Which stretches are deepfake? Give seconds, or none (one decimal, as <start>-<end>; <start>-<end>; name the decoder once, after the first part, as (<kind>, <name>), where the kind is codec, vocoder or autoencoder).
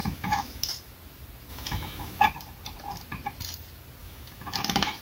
0.0-0.7 (autoencoder, DAC-VAE); 1.5-2.2; 4.0-5.0